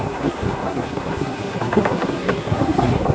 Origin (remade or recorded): remade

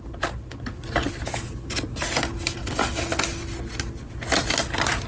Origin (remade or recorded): recorded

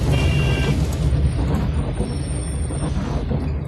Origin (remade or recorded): recorded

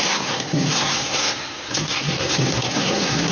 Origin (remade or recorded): remade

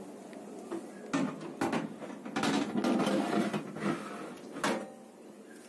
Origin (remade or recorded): recorded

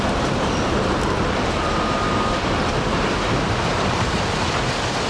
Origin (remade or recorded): remade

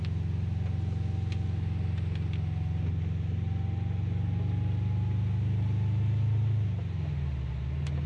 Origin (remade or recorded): recorded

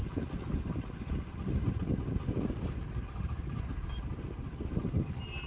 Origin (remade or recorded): recorded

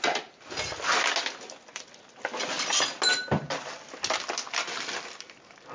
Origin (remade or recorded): recorded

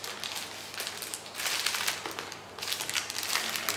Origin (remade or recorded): recorded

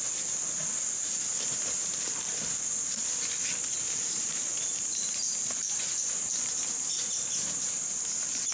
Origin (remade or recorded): recorded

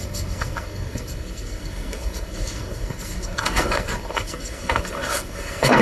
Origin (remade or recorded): remade